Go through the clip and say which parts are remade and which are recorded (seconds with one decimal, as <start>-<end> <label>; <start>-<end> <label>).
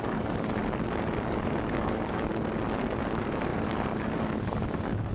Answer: 0.0-0.6 remade; 0.6-1.3 recorded; 1.3-2.3 remade; 2.3-3.0 recorded; 3.0-5.1 remade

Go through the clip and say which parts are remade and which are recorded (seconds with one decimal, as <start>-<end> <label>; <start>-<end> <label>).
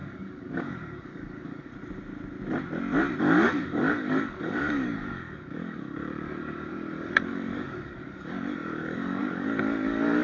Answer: 0.0-1.7 remade; 1.7-3.2 recorded; 3.2-10.2 remade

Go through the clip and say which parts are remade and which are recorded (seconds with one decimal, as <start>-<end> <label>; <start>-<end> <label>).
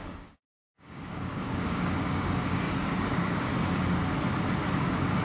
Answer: 0.0-3.5 remade; 3.5-4.8 recorded; 4.8-5.2 remade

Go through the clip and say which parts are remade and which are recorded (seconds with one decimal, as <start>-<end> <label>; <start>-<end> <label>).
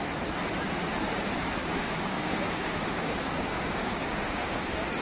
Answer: 0.0-1.6 recorded; 1.6-4.6 remade; 4.6-5.0 recorded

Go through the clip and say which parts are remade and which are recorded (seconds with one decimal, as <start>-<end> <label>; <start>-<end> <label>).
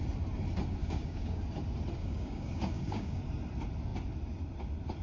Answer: 0.0-0.8 recorded; 0.8-1.4 remade; 1.4-2.0 recorded; 2.0-3.2 remade; 3.2-5.0 recorded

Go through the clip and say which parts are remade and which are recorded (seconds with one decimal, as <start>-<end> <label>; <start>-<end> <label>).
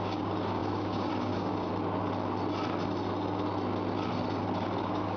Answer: 0.0-1.7 remade; 1.7-4.8 recorded; 4.8-5.2 remade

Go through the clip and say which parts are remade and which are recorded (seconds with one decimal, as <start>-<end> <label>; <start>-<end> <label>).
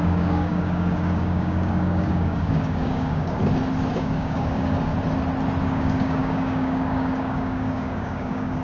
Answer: 0.0-3.4 remade; 3.4-3.9 recorded; 3.9-4.9 remade; 4.9-5.6 recorded; 5.6-8.6 remade